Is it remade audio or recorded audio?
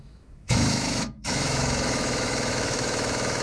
remade